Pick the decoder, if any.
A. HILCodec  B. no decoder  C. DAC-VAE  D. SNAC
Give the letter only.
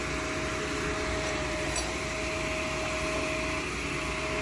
B